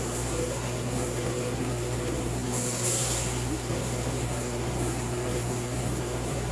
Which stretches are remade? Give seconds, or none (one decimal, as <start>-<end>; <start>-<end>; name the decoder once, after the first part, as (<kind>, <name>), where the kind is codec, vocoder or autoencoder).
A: 0.0-6.5 (codec, SNAC)